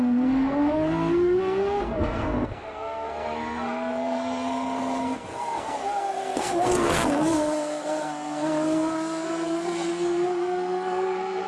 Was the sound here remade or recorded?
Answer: remade